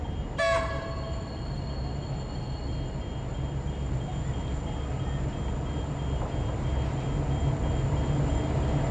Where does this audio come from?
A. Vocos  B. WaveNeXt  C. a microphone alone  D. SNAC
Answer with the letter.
C